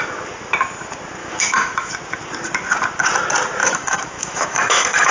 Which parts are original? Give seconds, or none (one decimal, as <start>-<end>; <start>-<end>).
0.0-1.2; 1.9-3.6

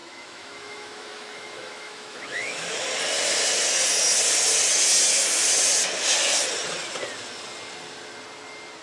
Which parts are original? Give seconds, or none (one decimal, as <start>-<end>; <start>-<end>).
2.7-8.8